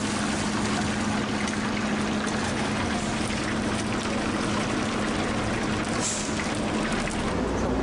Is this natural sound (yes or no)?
yes